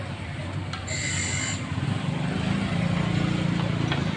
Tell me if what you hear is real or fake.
real